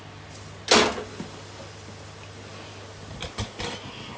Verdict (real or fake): real